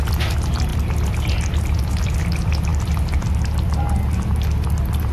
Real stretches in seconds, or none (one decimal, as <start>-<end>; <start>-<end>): 0.0-5.1